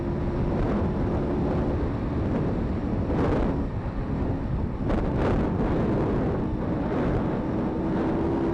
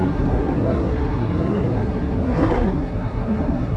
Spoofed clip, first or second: second